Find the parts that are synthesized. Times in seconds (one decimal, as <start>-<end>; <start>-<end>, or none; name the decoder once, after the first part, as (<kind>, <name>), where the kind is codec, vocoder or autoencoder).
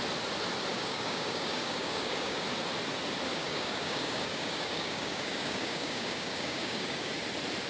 0.7-2.4 (codec, DAC); 3.3-7.1